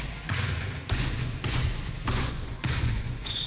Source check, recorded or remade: remade